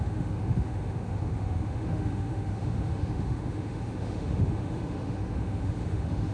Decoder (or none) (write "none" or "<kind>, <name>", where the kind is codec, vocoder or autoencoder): autoencoder, DAC-VAE